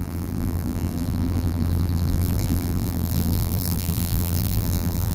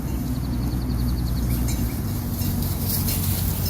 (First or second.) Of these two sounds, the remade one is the first